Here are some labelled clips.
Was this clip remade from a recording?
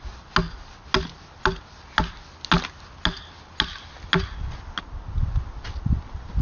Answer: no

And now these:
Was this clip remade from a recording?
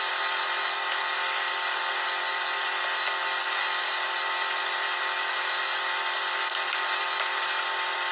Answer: no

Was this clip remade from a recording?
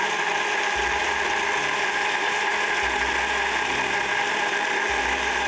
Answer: no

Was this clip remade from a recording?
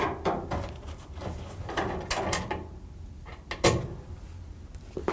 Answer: no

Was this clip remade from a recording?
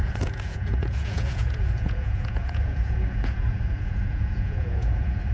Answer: yes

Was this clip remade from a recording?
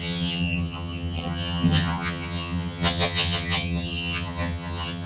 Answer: yes